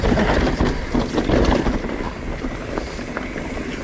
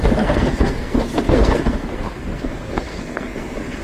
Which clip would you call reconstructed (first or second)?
second